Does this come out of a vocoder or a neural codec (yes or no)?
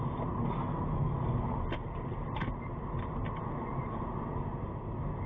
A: no